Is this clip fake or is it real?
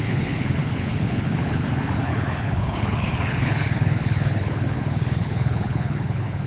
fake